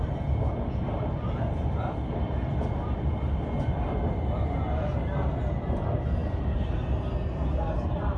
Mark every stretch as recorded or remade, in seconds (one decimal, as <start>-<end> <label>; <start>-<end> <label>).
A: 0.0-8.2 recorded